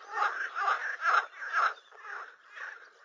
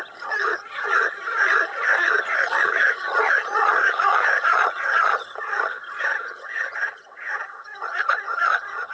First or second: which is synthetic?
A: second